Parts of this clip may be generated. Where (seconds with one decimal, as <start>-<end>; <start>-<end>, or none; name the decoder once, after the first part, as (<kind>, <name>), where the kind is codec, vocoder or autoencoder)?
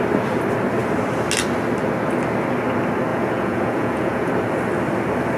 3.1-4.3 (vocoder, Vocos)